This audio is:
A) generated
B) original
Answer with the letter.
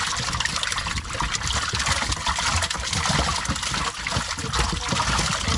B